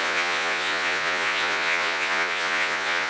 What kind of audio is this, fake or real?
fake